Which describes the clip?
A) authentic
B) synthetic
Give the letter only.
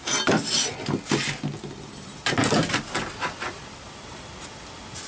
A